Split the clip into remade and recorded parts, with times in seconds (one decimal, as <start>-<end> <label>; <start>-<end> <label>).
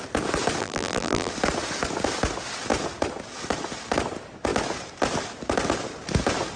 0.0-0.6 recorded; 0.6-1.3 remade; 1.3-6.6 recorded